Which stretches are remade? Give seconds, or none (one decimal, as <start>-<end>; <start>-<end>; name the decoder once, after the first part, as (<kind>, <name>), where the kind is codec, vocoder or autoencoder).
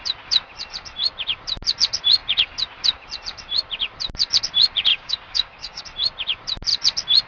4.9-5.8 (codec, DAC)